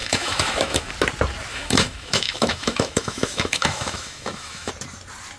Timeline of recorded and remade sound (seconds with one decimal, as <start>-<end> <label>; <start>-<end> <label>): 0.0-0.9 remade; 0.9-1.5 recorded; 1.5-4.7 remade; 4.7-5.4 recorded